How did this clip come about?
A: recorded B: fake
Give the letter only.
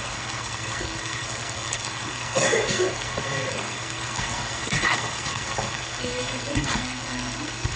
B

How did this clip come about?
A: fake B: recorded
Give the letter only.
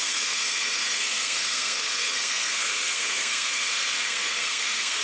A